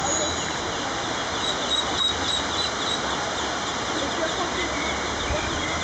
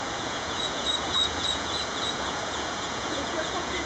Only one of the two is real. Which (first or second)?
first